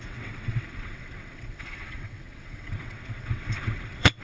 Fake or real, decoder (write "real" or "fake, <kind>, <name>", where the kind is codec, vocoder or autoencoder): fake, vocoder, WaveNeXt